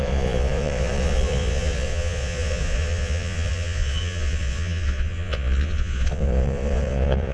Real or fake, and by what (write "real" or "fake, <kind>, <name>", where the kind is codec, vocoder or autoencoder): fake, vocoder, Vocos